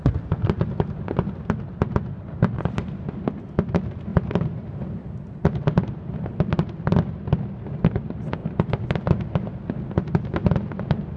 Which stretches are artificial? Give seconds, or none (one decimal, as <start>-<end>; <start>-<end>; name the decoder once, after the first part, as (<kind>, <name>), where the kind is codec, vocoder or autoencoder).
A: 4.1-6.4 (vocoder, BigVGAN v2); 8.4-9.3